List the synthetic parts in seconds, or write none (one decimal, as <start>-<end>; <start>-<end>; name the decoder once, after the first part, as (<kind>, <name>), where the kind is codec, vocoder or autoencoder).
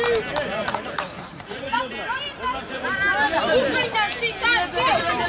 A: 0.5-1.8 (vocoder, Vocos)